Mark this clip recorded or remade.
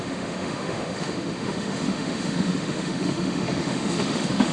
remade